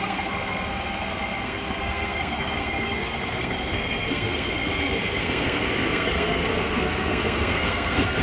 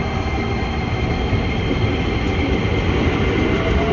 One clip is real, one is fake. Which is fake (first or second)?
first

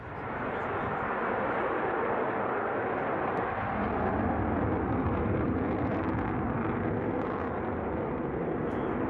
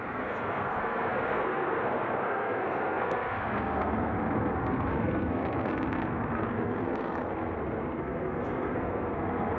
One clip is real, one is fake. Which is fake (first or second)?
second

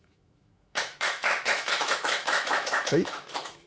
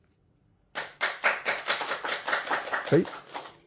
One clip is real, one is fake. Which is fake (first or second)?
first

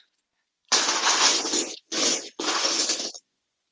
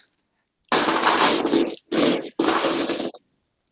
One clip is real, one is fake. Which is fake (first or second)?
first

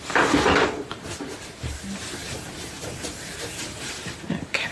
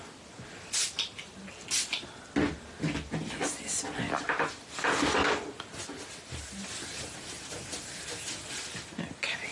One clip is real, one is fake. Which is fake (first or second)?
first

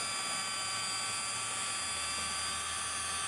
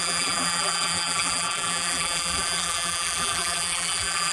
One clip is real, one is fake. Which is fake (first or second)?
second